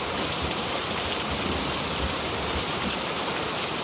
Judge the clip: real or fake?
fake